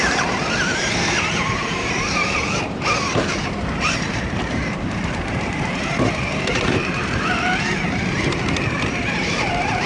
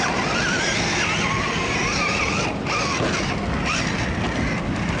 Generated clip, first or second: first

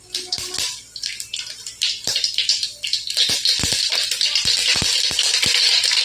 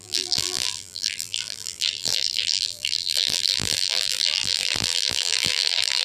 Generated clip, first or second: second